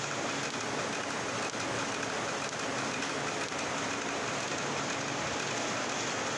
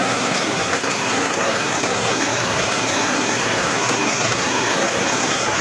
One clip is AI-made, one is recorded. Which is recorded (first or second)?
first